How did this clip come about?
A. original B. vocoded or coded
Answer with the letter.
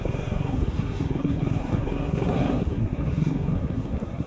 B